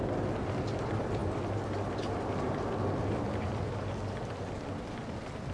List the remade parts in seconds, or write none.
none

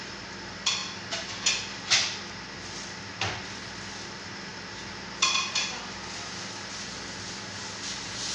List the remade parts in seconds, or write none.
none

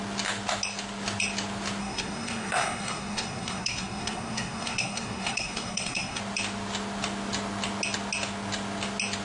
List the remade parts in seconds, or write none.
1.8-6.2 (codec, SNAC)

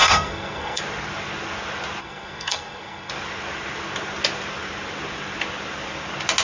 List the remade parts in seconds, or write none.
0.0-0.8 (codec, SNAC); 2.0-3.1

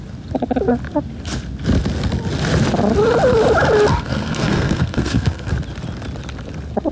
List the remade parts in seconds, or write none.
3.9-5.5 (codec, SNAC)

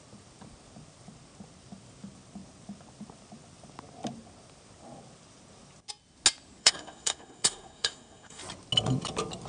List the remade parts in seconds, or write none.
6.6-8.4 (codec, SNAC)